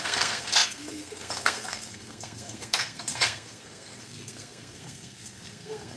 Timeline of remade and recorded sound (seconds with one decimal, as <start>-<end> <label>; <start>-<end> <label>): 0.0-6.0 remade